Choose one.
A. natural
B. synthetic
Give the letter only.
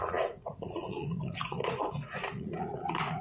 B